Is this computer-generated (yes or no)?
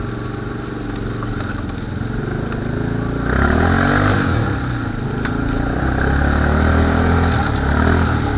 no